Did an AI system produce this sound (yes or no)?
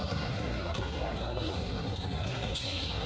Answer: yes